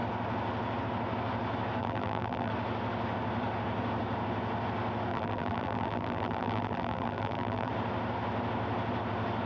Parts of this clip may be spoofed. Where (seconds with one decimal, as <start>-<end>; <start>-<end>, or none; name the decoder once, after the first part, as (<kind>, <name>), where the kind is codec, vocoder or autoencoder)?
1.8-2.5 (vocoder, BigVGAN v2); 5.1-7.7